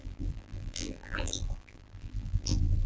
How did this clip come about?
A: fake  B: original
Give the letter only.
A